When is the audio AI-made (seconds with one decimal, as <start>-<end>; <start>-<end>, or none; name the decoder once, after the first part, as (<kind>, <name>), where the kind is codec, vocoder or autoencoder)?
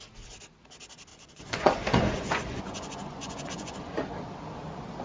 1.1-4.1 (vocoder, Vocos)